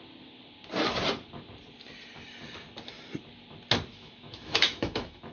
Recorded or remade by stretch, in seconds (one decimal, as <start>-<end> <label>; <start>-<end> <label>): 0.0-3.9 recorded; 3.9-5.3 remade